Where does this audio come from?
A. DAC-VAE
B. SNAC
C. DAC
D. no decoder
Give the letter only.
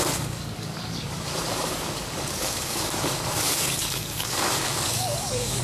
C